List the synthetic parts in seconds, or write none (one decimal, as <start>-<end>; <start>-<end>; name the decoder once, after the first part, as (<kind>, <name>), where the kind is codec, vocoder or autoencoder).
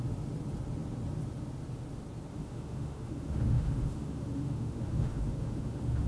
2.3-6.1 (autoencoder, DAC-VAE)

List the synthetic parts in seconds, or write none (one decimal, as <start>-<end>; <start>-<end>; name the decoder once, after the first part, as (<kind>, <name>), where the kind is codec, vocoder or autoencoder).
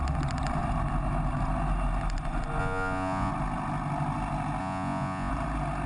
2.6-3.3 (vocoder, Vocos); 4.6-5.3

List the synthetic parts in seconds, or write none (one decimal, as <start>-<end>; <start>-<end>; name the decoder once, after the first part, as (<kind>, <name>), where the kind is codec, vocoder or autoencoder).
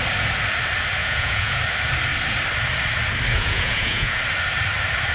1.0-1.6 (vocoder, Vocos); 3.3-4.2